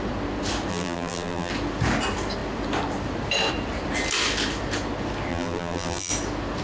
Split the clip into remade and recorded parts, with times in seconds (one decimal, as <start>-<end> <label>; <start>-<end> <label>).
0.0-0.7 recorded; 0.7-1.5 remade; 1.5-5.3 recorded; 5.3-6.1 remade; 6.1-6.6 recorded